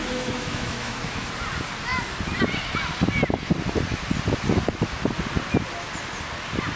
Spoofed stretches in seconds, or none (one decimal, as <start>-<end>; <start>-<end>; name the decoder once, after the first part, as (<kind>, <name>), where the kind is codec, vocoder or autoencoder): 0.0-1.3 (autoencoder, DAC-VAE)